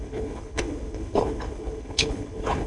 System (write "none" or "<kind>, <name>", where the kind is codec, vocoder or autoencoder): codec, HILCodec